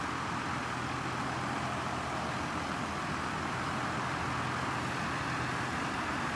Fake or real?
real